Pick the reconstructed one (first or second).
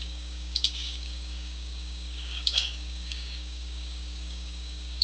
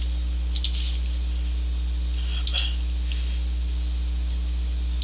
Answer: first